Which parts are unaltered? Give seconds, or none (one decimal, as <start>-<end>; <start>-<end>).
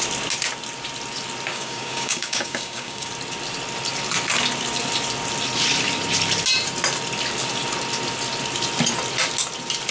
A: 0.0-1.5; 3.1-9.9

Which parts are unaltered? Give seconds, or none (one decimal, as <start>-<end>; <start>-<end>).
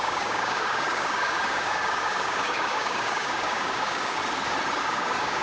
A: 4.2-4.8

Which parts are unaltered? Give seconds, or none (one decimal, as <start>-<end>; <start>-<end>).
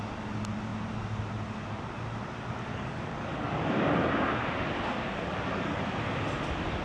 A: 0.0-2.7; 4.1-4.9; 5.8-6.8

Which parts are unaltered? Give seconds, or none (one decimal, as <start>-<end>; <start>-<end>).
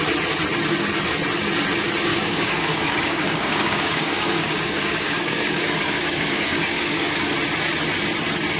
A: 0.0-2.1; 7.1-8.6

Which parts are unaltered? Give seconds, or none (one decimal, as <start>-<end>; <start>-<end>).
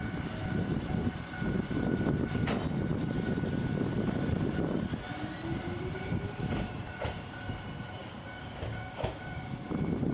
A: 0.0-8.0; 9.7-10.1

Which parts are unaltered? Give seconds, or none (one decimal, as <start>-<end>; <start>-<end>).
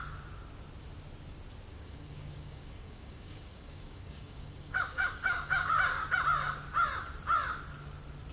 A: 0.0-1.7; 5.7-8.3